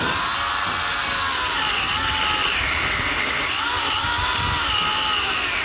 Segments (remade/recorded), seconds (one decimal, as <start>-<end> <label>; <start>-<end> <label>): 0.0-1.0 recorded; 1.0-1.6 remade; 1.6-2.0 recorded; 2.0-5.6 remade

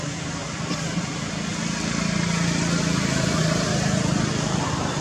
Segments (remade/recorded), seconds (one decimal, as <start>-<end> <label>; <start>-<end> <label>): 0.0-5.0 recorded

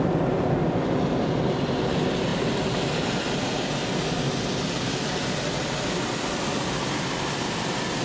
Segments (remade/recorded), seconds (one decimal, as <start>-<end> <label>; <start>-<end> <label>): 0.0-8.0 recorded

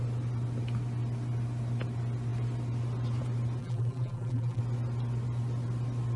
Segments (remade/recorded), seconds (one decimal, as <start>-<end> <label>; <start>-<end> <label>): 0.0-3.6 recorded; 3.6-4.6 remade; 4.6-6.2 recorded

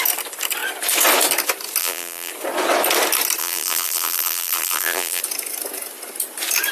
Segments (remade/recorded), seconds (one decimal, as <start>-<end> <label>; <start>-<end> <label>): 0.0-1.8 recorded; 1.8-2.3 remade; 2.3-3.4 recorded; 3.4-5.2 remade; 5.2-6.7 recorded

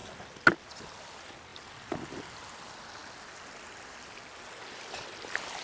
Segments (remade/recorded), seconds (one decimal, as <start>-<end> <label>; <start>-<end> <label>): 0.0-0.8 recorded; 0.8-1.5 remade; 1.5-2.5 recorded; 2.5-3.0 remade; 3.0-4.7 recorded; 4.7-5.6 remade

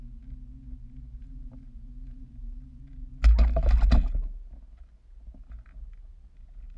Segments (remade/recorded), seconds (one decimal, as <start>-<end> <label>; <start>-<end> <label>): 0.0-1.2 recorded; 1.2-2.8 remade; 2.8-6.8 recorded

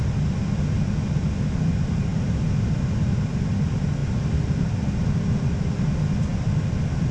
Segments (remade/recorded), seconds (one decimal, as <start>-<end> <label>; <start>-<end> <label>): 0.0-4.0 recorded; 4.0-4.9 remade; 4.9-7.1 recorded